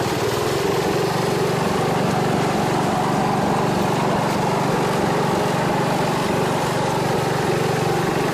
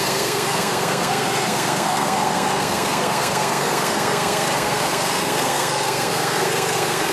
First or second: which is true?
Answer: first